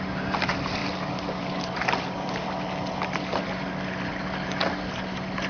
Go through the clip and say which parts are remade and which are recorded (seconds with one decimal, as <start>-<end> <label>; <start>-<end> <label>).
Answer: 0.0-5.5 recorded